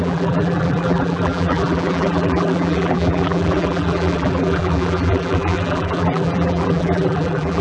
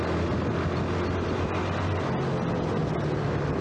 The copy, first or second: first